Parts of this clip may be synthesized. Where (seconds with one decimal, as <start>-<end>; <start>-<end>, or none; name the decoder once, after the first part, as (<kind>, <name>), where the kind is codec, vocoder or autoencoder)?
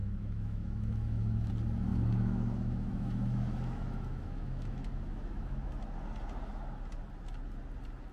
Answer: 0.0-1.5 (autoencoder, DAC-VAE); 1.9-5.7